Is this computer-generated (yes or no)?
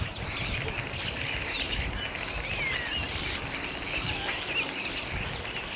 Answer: no